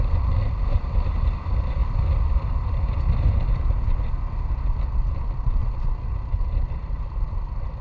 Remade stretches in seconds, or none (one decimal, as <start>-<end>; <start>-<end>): none